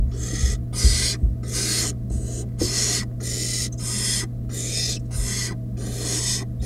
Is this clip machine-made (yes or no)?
no